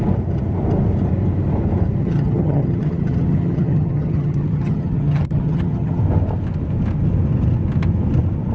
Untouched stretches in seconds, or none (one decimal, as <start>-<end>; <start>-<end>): 0.0-2.0; 6.0-8.5